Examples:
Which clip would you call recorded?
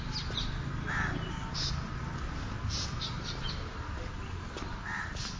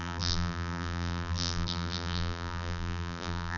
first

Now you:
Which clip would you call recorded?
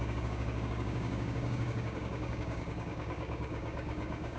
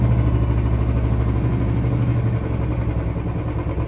second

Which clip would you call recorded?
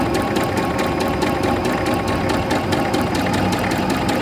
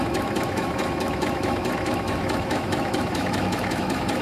first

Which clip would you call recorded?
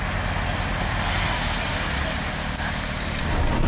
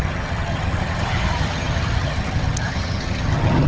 first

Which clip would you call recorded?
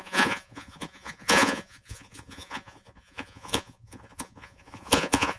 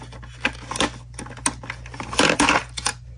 second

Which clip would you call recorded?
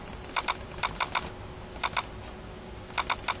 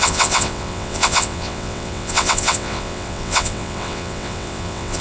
first